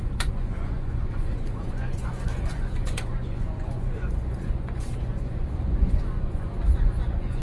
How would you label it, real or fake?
fake